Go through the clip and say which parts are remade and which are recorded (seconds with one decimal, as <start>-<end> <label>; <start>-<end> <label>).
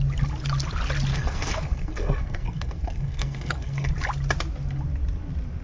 0.0-1.1 recorded; 1.1-3.9 remade; 3.9-5.6 recorded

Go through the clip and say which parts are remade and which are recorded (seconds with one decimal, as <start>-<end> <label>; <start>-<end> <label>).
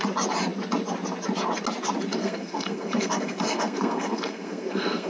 0.0-2.2 recorded; 2.2-5.1 remade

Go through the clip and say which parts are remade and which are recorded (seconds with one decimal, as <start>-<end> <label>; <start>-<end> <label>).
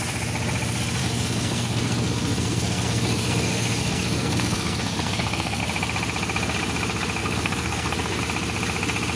0.0-1.0 recorded; 1.0-5.6 remade; 5.6-7.2 recorded; 7.2-8.2 remade; 8.2-9.2 recorded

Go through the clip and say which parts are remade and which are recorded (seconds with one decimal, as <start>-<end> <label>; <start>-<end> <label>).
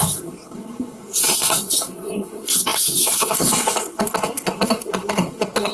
0.0-5.7 remade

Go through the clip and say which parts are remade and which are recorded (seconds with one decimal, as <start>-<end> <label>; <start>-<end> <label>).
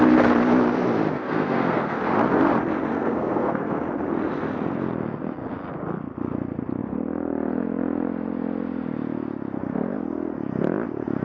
0.0-1.1 recorded; 1.1-2.0 remade; 2.0-2.9 recorded; 2.9-3.8 remade; 3.8-11.2 recorded